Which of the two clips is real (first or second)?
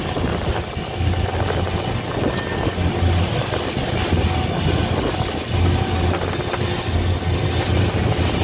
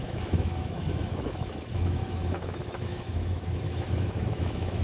first